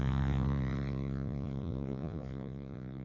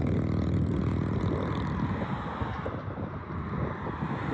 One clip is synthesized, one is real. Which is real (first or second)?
second